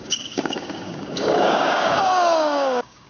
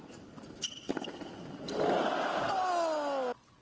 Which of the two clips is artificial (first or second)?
first